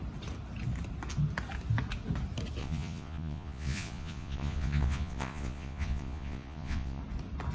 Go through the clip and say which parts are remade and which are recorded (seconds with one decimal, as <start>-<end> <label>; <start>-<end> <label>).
0.0-2.6 recorded; 2.6-7.0 remade; 7.0-7.5 recorded